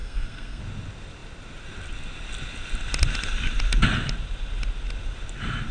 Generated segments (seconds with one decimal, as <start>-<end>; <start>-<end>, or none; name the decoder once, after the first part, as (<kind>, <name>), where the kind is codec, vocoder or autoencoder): 0.0-0.6 (codec, SNAC)